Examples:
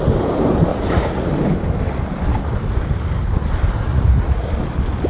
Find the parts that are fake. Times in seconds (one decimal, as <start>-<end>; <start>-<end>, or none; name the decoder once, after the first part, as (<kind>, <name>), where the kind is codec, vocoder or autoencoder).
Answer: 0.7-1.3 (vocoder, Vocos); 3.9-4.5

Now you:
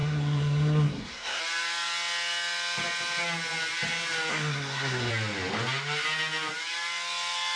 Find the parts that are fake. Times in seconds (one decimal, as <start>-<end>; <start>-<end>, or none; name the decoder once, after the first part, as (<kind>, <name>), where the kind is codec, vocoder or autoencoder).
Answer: 0.0-1.4 (codec, SNAC); 4.3-5.1

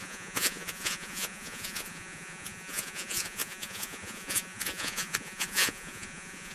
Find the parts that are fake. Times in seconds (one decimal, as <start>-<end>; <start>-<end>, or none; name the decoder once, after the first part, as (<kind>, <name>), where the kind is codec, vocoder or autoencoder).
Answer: 0.0-6.5 (vocoder, Vocos)